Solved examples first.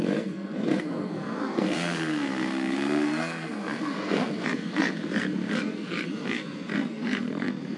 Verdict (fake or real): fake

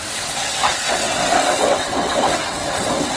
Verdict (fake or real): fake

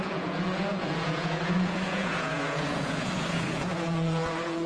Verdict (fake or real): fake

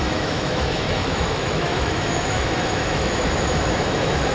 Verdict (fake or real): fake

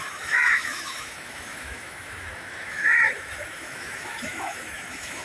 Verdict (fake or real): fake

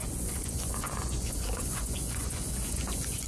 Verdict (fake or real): fake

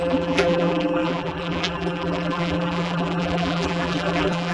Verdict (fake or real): fake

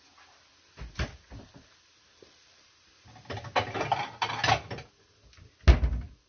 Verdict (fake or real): real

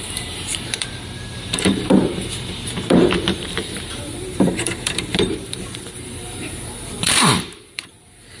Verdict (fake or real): fake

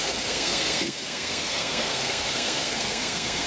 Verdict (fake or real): fake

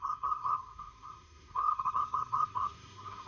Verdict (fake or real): fake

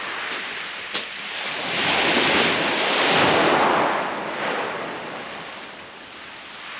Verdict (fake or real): real